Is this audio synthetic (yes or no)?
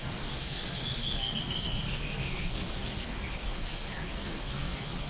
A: yes